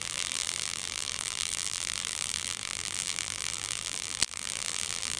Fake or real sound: fake